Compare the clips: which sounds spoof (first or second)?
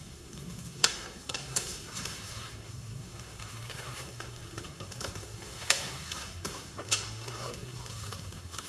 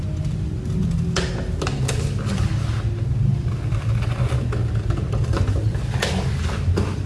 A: first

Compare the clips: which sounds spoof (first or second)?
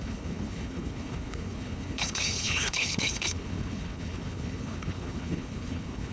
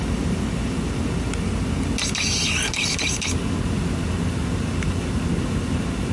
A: first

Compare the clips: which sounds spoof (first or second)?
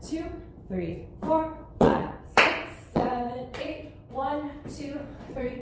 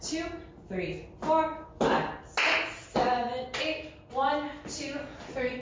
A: first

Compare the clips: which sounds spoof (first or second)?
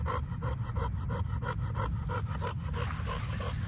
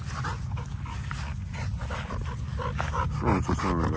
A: first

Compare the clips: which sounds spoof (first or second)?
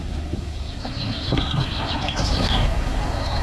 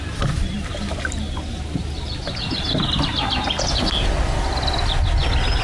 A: first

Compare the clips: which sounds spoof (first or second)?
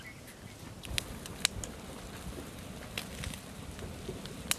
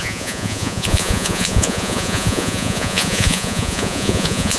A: second